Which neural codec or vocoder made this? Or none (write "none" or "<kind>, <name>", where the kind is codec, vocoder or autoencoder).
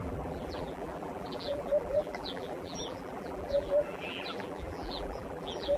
vocoder, BigVGAN v2